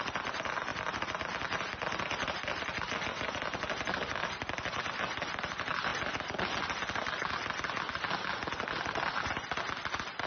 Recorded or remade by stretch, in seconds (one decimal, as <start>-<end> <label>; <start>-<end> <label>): 0.0-10.3 recorded